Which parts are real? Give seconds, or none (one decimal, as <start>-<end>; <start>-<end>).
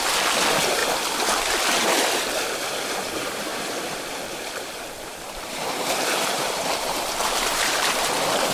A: 0.0-3.5; 8.1-8.5